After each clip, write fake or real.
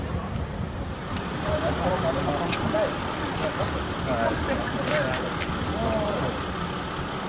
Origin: real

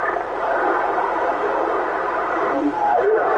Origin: fake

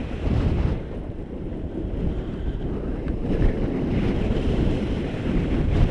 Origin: fake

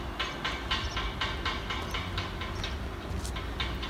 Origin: real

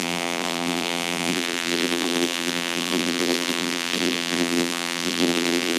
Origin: fake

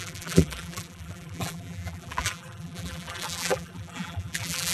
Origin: fake